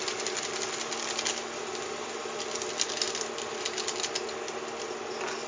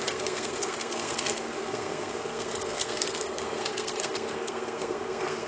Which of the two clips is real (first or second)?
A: first